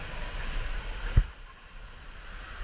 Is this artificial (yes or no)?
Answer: no